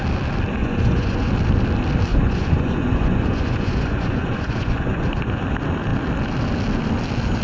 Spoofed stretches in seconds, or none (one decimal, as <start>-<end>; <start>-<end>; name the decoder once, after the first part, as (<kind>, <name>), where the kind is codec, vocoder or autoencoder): 0.6-1.3 (vocoder, Vocos); 2.1-5.4